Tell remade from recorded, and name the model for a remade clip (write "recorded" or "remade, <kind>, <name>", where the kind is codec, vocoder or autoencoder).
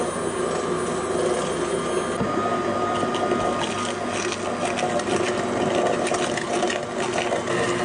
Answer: recorded